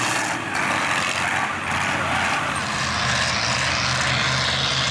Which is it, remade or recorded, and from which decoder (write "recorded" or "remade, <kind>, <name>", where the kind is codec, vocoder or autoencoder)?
recorded